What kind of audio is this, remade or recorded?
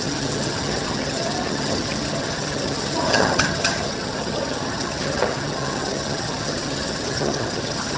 remade